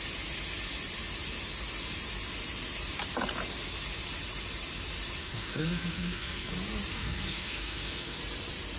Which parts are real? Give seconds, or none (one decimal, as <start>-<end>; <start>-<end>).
0.0-5.2; 6.5-6.9; 8.2-8.8